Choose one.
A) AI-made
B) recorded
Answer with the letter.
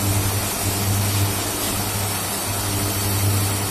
B